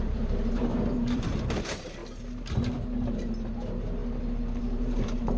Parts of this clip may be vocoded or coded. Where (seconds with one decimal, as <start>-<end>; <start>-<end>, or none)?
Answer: 0.0-2.0; 3.5-4.0; 4.6-5.4